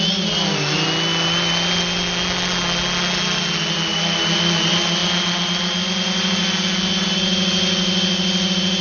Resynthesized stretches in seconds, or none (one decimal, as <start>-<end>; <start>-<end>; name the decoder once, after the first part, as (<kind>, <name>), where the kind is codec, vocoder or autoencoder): none